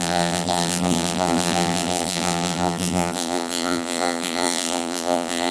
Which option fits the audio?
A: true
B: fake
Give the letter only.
B